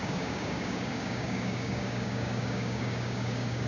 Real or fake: fake